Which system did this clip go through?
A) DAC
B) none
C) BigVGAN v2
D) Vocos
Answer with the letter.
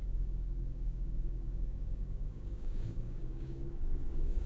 A